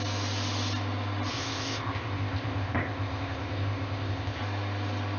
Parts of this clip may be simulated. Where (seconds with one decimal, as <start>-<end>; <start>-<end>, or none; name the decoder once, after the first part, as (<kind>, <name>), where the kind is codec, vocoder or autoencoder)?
1.3-4.4 (codec, ZipCodec)